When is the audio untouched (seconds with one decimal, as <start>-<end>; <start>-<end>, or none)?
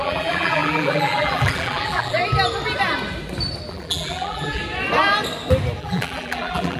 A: 2.2-3.7; 4.6-5.8